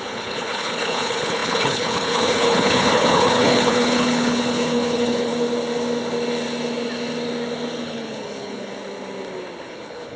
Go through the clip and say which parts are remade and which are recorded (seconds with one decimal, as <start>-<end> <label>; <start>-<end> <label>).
0.0-5.3 remade; 5.3-7.8 recorded; 7.8-8.7 remade; 8.7-9.6 recorded; 9.6-10.2 remade